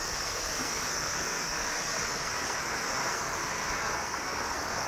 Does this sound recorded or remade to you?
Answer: remade